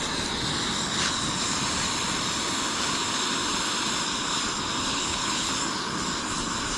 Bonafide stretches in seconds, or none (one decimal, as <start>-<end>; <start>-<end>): 0.0-4.9; 5.5-6.8